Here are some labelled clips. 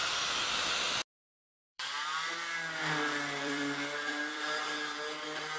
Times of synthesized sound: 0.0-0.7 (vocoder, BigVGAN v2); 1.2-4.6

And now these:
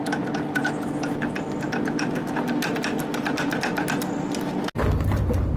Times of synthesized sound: none

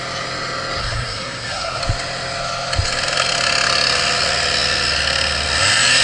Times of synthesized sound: 0.8-1.8 (codec, SNAC)

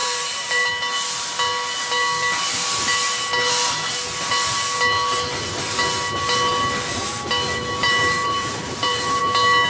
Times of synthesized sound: 0.0-0.7 (vocoder, BigVGAN v2); 7.8-9.2

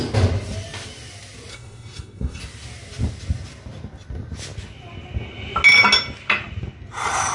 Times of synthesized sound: 1.5-2.4 (codec, SNAC)

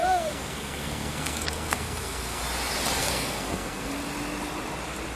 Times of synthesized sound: 0.0-2.4 (codec, SNAC); 3.0-3.9